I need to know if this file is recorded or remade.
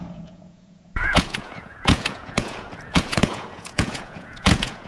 remade